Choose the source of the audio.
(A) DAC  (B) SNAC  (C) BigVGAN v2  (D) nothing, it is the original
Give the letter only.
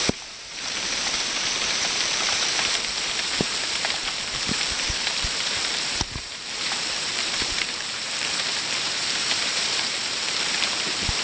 C